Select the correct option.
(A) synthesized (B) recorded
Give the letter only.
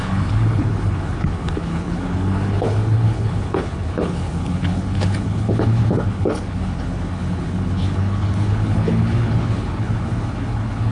A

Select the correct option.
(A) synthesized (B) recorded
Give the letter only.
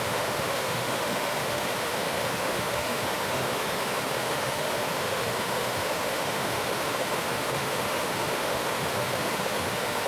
A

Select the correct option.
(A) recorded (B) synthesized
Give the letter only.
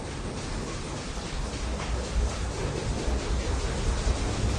A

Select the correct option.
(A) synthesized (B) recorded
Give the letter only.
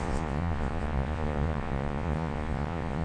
A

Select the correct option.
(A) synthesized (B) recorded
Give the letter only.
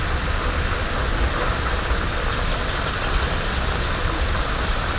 A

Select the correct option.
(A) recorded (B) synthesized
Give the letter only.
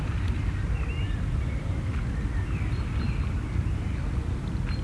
A